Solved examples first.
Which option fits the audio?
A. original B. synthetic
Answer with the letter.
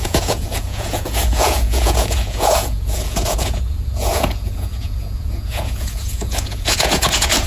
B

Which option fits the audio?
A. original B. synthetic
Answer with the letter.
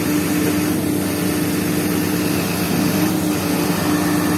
A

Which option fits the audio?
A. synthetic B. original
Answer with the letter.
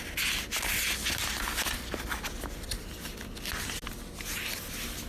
B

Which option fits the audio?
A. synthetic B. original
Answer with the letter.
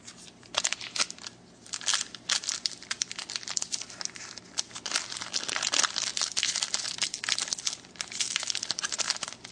B